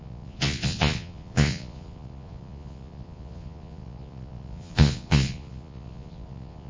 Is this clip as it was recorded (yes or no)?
no